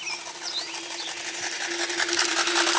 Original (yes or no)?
yes